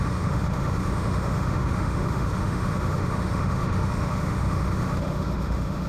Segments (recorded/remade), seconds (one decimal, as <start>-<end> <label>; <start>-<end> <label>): 0.0-5.9 remade